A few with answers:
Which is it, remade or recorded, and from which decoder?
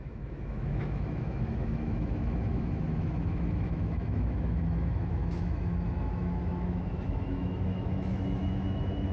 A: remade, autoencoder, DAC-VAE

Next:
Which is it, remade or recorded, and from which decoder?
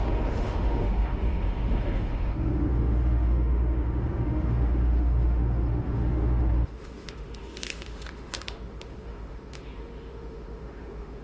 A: remade, autoencoder, DAC-VAE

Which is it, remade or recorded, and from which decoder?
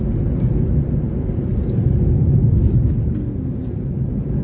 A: recorded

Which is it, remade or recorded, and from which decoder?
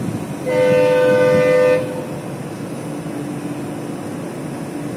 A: recorded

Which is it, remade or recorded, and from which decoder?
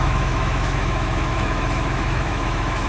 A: remade, autoencoder, DAC-VAE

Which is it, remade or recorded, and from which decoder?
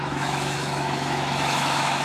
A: remade, autoencoder, DAC-VAE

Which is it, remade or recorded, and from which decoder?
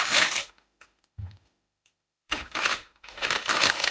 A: remade, autoencoder, DAC-VAE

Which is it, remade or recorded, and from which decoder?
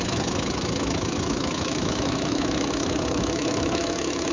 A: remade, autoencoder, DAC-VAE